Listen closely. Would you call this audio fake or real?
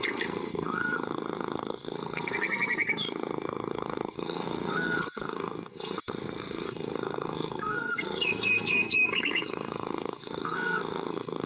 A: fake